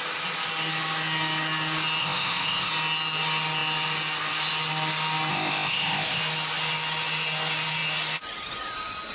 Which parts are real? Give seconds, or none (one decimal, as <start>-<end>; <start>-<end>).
0.0-2.0; 2.7-5.3; 6.2-9.1